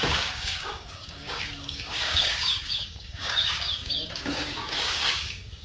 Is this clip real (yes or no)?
no